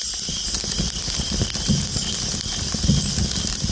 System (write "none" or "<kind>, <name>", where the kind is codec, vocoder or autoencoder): none